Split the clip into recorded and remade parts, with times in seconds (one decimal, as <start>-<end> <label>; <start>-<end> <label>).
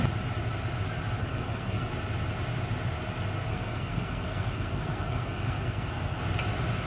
0.0-1.2 recorded; 1.2-1.9 remade; 1.9-3.5 recorded; 3.5-6.2 remade; 6.2-6.9 recorded